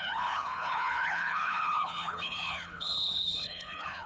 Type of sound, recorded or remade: remade